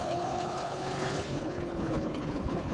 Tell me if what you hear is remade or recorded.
remade